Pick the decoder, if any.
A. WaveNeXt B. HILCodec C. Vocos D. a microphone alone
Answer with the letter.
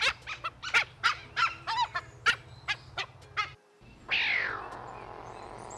D